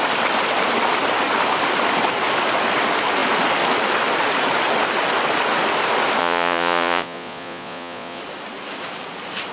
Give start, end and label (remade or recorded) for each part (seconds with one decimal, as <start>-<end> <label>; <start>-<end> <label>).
0.0-6.2 recorded; 6.2-8.2 remade; 8.2-9.5 recorded